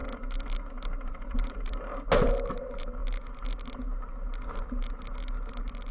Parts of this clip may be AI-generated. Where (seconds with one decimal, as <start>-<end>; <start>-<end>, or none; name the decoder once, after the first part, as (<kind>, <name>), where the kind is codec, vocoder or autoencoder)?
0.7-1.9 (vocoder, BigVGAN v2); 2.5-3.0